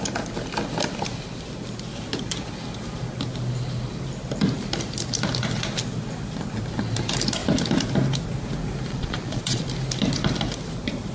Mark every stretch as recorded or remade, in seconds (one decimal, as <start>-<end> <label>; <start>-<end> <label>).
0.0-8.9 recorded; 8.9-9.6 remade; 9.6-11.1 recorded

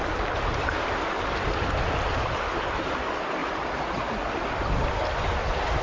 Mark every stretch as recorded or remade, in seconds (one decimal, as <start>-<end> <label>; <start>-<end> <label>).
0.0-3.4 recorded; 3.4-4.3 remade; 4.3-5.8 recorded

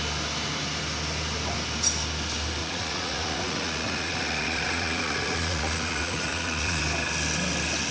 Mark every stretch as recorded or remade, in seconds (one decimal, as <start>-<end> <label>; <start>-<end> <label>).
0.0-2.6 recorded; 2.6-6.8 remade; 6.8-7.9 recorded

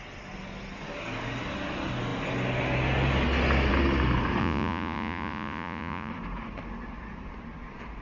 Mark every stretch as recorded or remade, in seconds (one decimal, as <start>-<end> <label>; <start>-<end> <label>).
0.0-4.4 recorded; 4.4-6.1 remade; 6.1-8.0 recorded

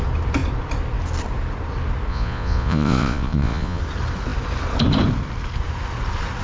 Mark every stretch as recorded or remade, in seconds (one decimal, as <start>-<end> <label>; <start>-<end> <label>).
0.0-2.1 recorded; 2.1-3.8 remade; 3.8-6.4 recorded